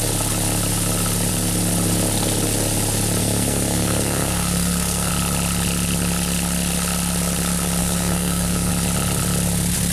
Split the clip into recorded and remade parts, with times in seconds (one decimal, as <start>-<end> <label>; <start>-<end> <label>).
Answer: 0.0-3.2 recorded; 3.2-5.1 remade; 5.1-7.8 recorded; 7.8-8.7 remade; 8.7-9.9 recorded